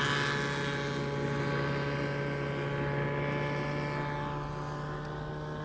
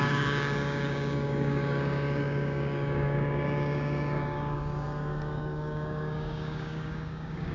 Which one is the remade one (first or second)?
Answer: second